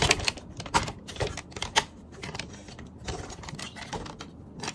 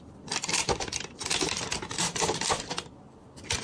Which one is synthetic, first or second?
second